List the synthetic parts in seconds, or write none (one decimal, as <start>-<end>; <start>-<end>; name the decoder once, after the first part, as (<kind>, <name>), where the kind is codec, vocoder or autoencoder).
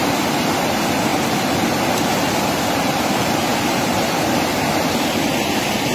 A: 3.5-4.4 (vocoder, BigVGAN v2)